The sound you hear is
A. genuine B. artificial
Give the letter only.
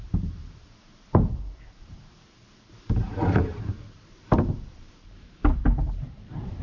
B